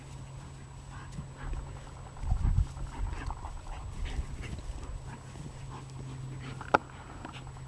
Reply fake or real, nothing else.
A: real